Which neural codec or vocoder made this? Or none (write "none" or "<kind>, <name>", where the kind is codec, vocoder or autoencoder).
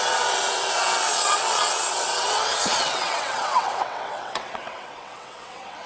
vocoder, WaveNeXt